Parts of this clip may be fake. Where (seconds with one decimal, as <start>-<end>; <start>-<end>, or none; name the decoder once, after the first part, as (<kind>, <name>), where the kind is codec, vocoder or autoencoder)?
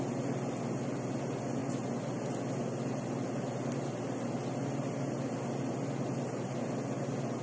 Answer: none